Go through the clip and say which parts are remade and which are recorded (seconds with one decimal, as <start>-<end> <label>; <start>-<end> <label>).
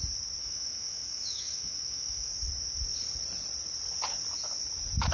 0.0-0.4 recorded; 0.4-2.3 remade; 2.3-5.1 recorded